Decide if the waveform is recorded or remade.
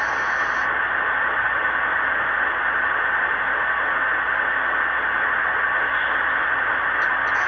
recorded